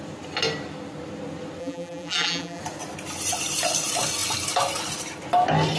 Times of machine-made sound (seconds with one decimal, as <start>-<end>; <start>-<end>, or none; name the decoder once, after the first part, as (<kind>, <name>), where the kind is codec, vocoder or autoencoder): 1.6-2.6 (vocoder, BigVGAN v2)